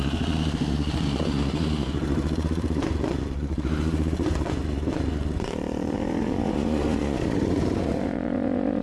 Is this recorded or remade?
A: remade